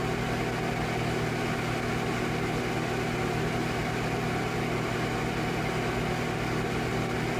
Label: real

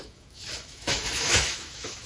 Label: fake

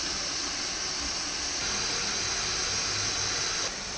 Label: real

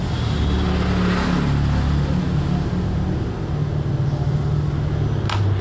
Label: real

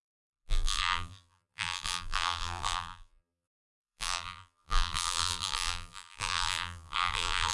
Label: fake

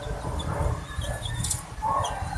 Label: fake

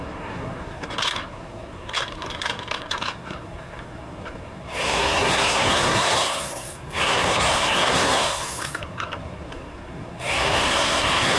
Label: fake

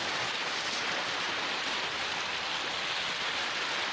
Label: real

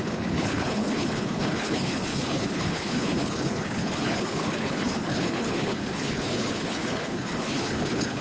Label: fake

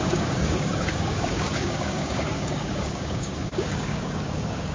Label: fake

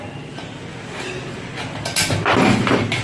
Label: real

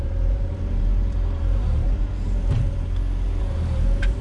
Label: fake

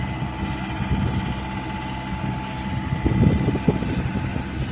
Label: real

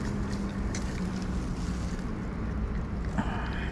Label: real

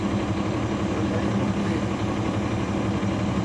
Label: real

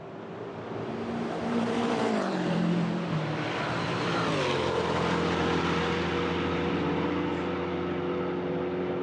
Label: fake